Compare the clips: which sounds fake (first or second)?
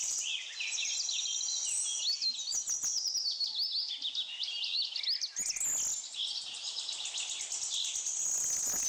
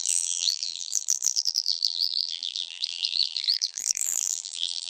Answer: second